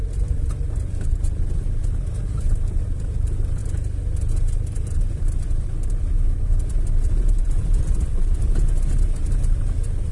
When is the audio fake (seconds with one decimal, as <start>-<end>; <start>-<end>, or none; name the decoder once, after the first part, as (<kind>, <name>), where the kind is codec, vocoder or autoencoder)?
0.0-10.1 (vocoder, BigVGAN v2)